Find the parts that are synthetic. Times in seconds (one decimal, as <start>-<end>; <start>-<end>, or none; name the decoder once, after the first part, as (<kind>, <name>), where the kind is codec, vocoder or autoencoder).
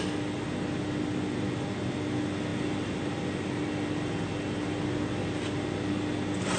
none